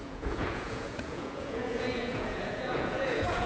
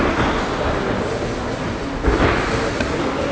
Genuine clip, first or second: second